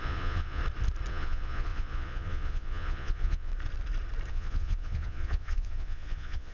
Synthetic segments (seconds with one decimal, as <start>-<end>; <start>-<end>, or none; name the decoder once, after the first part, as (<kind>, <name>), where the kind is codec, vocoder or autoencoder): 0.0-0.6 (vocoder, Vocos); 1.1-3.5; 4.3-6.5